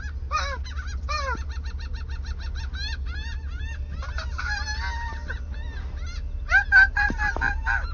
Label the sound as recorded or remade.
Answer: recorded